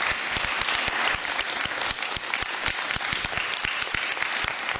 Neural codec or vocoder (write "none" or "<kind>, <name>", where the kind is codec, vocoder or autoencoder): none